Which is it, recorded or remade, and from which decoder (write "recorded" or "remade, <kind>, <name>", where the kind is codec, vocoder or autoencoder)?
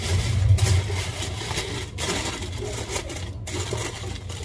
recorded